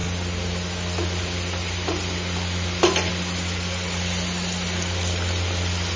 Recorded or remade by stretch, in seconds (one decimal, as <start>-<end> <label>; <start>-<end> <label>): 0.0-6.0 recorded